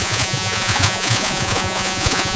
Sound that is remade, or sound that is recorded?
remade